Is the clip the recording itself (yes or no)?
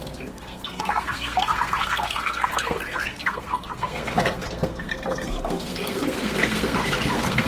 no